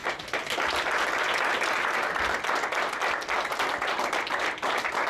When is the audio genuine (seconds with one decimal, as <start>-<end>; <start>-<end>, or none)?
0.0-5.1